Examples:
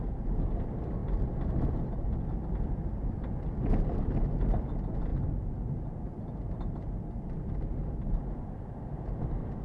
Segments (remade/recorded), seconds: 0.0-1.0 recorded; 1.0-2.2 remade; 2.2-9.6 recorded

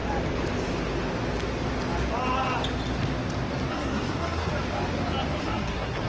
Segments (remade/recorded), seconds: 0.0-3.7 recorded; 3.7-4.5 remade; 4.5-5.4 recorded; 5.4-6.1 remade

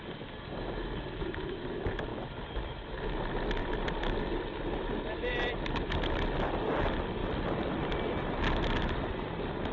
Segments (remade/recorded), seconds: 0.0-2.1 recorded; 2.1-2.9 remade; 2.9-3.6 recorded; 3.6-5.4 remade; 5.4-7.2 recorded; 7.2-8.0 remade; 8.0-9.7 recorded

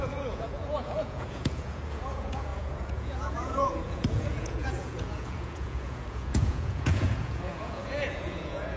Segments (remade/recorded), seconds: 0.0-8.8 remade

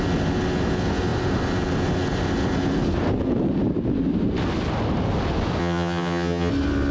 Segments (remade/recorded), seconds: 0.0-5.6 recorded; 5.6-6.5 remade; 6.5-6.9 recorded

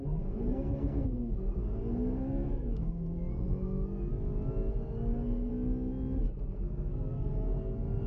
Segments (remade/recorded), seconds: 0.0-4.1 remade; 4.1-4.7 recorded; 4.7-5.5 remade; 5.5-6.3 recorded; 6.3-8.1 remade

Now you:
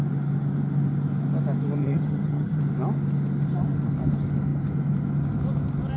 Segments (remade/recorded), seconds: 0.0-1.8 recorded; 1.8-2.6 remade; 2.6-6.0 recorded

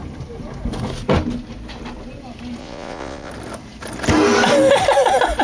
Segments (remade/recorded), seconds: 0.0-2.6 recorded; 2.6-3.3 remade; 3.3-5.4 recorded